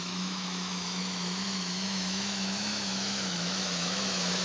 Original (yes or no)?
no